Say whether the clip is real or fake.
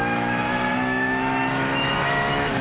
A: fake